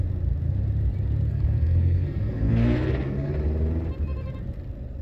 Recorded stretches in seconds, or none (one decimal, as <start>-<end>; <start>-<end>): 0.0-1.3; 3.3-5.0